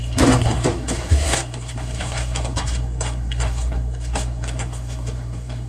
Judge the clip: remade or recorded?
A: remade